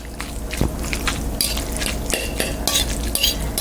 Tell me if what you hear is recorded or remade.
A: recorded